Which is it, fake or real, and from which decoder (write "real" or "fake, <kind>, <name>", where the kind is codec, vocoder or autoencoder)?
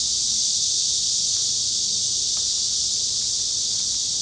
real